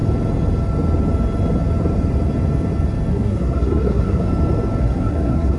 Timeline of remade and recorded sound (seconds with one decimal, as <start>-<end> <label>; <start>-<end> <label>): 0.0-3.1 recorded; 3.1-4.3 remade; 4.3-4.8 recorded; 4.8-5.6 remade